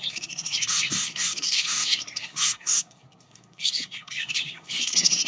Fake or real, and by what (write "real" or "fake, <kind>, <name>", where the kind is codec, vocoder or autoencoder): fake, codec, SNAC